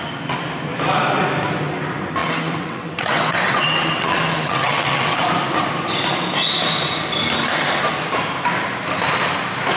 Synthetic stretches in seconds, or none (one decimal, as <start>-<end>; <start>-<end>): 2.2-5.3